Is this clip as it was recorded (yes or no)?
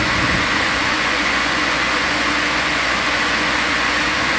no